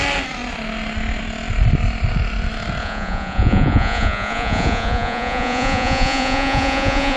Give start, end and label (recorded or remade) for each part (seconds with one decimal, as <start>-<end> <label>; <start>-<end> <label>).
0.0-2.8 recorded; 2.8-7.2 remade